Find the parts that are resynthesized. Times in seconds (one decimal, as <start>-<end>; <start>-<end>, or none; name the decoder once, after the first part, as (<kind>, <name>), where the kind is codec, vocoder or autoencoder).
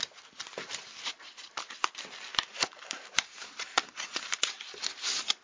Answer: 2.3-4.8 (vocoder, BigVGAN v2)